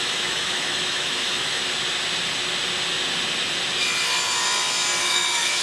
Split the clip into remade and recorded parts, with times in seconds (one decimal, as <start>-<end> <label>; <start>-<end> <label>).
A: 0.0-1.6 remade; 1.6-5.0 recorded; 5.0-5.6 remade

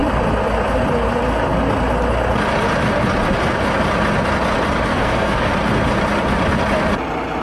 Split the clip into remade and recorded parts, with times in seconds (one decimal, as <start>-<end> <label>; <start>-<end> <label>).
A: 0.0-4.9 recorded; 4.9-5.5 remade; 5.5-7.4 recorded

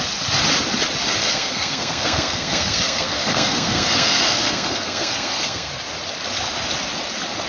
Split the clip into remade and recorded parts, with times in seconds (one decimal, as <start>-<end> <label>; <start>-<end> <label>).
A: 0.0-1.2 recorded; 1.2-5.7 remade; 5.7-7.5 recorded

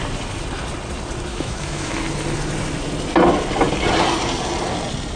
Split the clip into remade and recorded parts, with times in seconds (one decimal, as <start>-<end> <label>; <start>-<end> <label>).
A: 0.0-1.3 recorded; 1.3-2.0 remade; 2.0-5.2 recorded

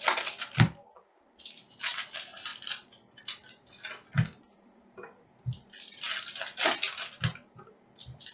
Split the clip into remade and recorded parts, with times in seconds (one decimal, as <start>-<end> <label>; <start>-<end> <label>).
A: 0.0-2.5 recorded; 2.5-6.1 remade; 6.1-8.3 recorded